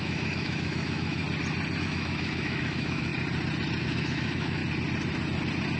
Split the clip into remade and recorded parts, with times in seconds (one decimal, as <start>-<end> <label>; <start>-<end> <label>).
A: 0.0-1.2 remade; 1.2-1.8 recorded; 1.8-3.1 remade; 3.1-3.8 recorded; 3.8-4.6 remade; 4.6-5.8 recorded